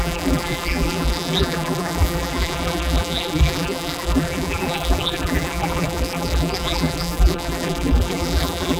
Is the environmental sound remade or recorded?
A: remade